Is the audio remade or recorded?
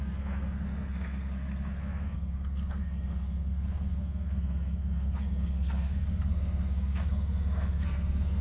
remade